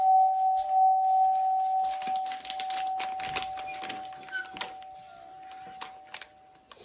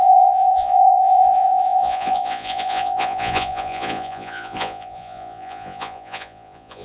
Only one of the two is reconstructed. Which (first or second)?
second